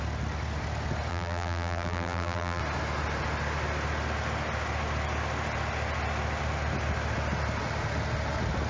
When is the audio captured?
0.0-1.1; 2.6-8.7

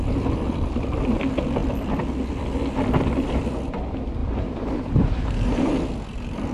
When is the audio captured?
0.0-4.2; 5.7-6.5

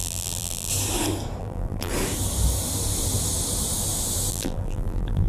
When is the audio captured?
0.7-1.4; 1.9-4.3

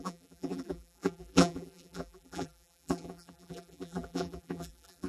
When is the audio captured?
none

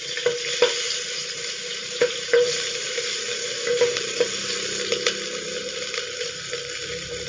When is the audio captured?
0.0-1.7; 4.4-7.3

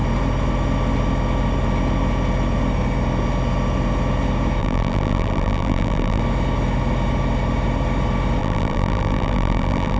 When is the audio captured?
0.0-4.6; 6.2-8.4

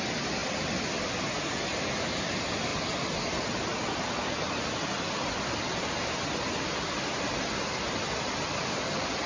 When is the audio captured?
0.0-9.3

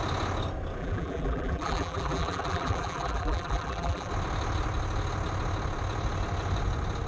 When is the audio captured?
0.0-0.8; 4.1-7.1